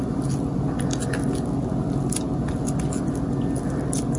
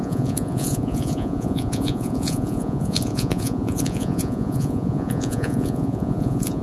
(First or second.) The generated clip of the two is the second